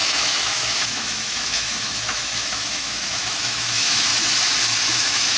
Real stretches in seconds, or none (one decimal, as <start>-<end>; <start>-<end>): 4.1-4.9